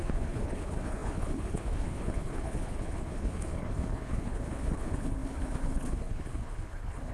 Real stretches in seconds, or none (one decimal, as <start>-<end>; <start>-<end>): none